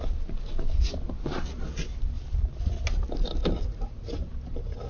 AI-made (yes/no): no